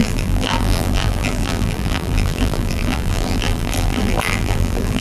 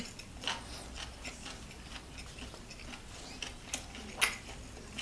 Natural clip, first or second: second